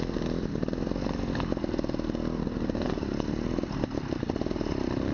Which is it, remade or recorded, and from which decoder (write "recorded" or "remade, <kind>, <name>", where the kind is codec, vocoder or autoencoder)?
recorded